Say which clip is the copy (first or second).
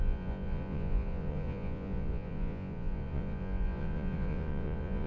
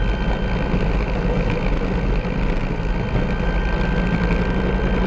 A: first